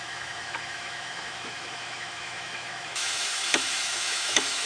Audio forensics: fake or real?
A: fake